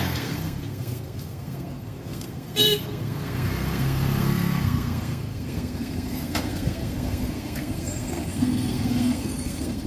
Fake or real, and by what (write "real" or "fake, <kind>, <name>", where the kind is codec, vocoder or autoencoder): fake, codec, SNAC